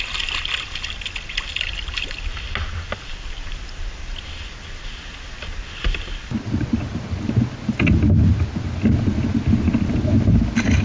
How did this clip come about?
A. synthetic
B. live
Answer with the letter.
B